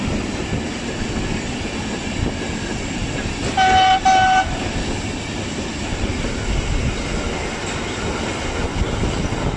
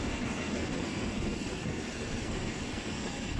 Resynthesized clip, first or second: second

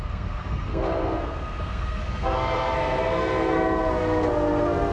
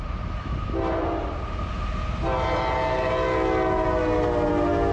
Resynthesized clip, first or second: first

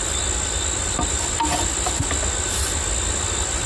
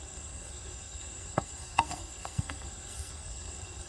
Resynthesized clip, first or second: second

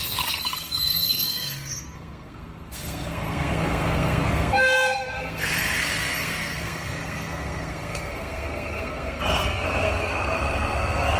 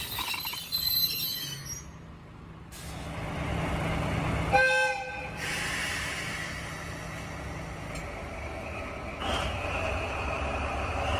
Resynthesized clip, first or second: first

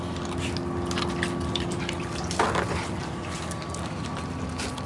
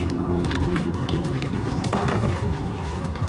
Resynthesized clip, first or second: second